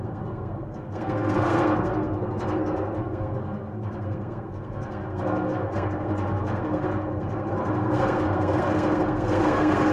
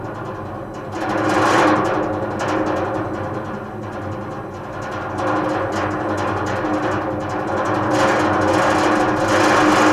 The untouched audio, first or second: second